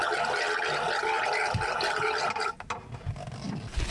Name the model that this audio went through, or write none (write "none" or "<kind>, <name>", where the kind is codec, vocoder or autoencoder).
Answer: none